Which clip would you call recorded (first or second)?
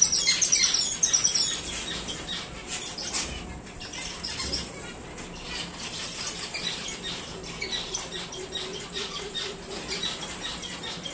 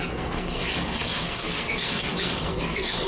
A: first